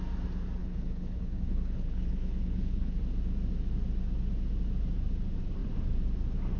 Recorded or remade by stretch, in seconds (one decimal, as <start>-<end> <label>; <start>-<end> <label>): 0.0-0.6 recorded; 0.6-3.0 remade; 3.0-6.6 recorded